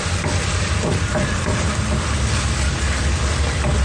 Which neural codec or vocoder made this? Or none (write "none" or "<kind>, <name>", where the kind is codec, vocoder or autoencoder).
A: none